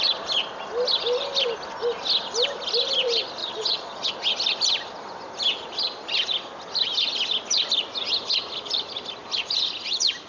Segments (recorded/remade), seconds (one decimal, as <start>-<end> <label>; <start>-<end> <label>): 0.0-3.4 recorded; 3.4-4.1 remade; 4.1-10.3 recorded